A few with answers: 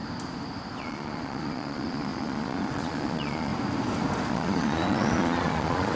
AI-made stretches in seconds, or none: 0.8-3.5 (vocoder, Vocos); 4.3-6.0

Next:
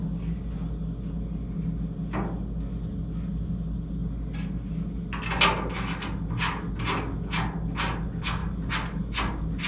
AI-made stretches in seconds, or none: none

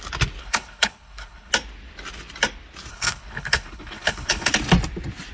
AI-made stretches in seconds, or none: 0.4-1.5 (codec, HILCodec); 2.9-4.5